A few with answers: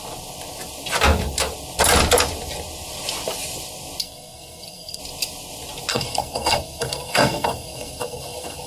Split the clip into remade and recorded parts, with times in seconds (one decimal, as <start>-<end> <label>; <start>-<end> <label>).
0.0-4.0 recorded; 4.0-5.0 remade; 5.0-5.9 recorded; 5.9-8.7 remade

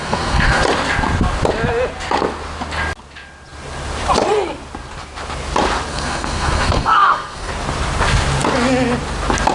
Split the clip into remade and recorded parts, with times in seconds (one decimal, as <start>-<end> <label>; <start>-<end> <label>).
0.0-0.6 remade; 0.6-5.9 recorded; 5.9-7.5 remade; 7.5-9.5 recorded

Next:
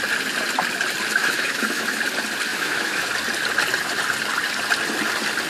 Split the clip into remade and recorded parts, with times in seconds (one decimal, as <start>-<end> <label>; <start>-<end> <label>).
0.0-1.2 recorded; 1.2-2.0 remade; 2.0-2.5 recorded; 2.5-3.1 remade; 3.1-5.5 recorded

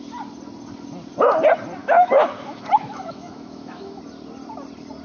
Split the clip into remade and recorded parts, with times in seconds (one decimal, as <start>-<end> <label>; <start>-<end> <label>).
0.0-1.8 recorded; 1.8-4.0 remade; 4.0-5.0 recorded

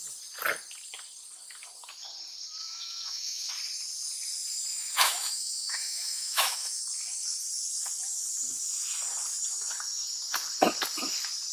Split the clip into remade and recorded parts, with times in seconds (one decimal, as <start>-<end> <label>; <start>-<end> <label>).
0.0-2.6 recorded; 2.6-3.5 remade; 3.5-4.7 recorded; 4.7-6.8 remade; 6.8-11.5 recorded